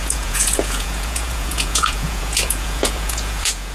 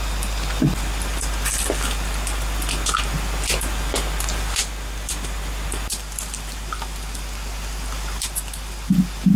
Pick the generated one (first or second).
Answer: first